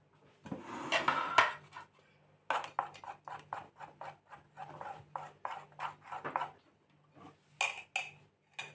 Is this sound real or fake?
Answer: real